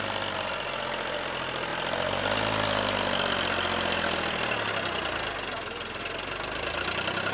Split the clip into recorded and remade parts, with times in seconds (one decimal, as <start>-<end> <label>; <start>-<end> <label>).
0.0-7.3 recorded